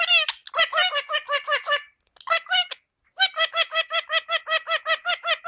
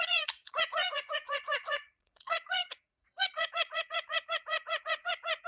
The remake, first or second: second